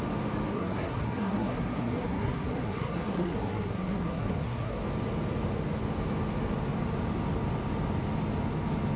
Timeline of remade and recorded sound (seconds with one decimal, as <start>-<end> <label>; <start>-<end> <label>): 0.0-0.5 recorded; 0.5-4.8 remade; 4.8-9.0 recorded